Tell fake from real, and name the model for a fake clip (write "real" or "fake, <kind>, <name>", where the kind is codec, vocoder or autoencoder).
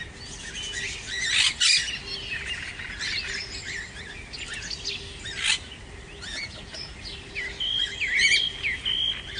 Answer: real